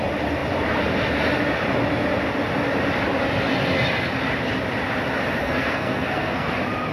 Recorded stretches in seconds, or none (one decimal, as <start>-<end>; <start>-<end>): 0.0-5.4; 6.5-6.9

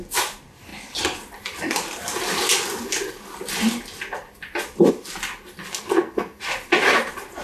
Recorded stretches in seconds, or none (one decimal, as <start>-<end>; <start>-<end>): 0.0-5.7; 6.4-7.4

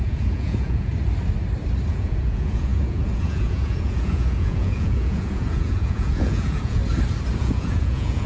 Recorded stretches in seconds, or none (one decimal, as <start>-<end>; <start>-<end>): 0.9-1.9; 6.8-7.4

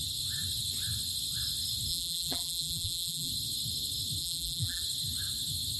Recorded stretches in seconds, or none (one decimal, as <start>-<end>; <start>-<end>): 0.0-1.9; 3.3-4.2; 4.8-5.8

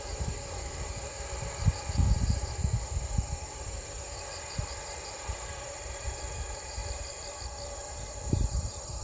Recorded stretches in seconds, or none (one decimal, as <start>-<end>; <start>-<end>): 6.8-7.9

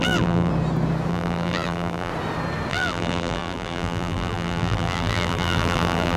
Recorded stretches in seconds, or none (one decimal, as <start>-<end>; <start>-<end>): 0.5-1.1; 2.1-2.7

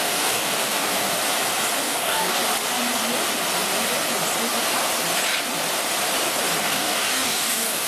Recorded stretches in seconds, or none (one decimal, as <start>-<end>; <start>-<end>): 1.1-1.8; 2.4-6.6

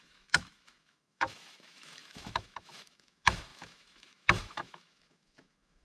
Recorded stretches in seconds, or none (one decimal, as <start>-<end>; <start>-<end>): none